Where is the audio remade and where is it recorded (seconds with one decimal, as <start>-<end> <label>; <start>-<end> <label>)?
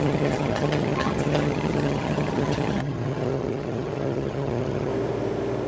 0.0-4.9 remade; 4.9-5.7 recorded